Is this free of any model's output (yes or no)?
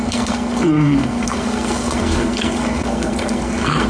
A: no